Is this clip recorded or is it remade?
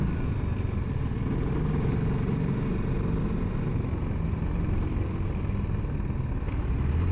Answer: recorded